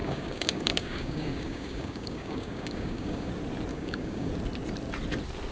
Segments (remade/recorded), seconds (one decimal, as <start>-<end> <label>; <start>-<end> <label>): 0.0-3.3 remade; 3.3-3.7 recorded; 3.7-4.3 remade; 4.3-5.5 recorded